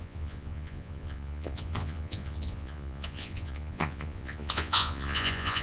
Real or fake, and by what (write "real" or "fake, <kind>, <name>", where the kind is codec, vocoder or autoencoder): fake, vocoder, Vocos